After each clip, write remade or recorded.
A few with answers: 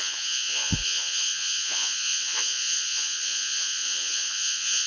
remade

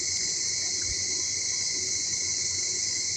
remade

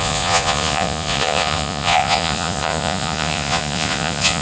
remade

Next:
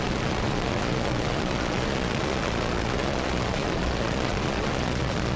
remade